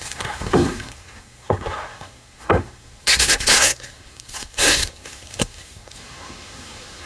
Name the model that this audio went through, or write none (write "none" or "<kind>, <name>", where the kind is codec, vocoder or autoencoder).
codec, SNAC